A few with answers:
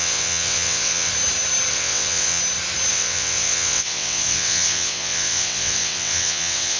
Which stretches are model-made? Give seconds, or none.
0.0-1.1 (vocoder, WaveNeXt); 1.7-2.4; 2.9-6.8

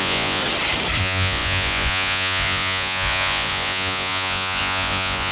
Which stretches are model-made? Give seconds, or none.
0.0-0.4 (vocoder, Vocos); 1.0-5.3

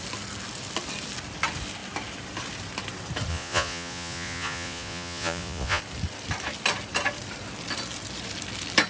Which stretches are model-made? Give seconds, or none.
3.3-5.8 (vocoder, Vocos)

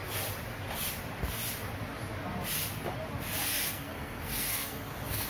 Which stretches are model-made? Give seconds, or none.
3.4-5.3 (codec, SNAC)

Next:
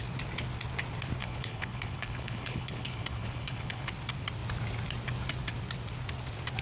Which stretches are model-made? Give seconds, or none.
1.2-3.9 (codec, HILCodec)